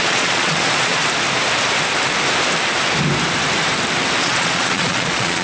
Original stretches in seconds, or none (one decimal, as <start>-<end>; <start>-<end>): 1.0-4.2